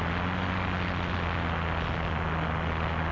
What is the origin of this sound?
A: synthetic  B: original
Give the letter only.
B